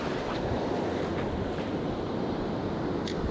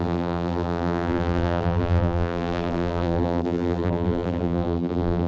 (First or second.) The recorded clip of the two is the first